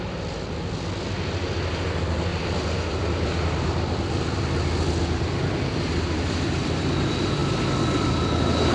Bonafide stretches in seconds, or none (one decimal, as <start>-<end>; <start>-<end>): 7.4-8.7